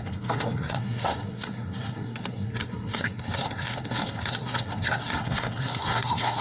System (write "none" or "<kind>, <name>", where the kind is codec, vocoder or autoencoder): codec, SNAC